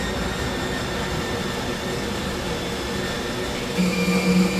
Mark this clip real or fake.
real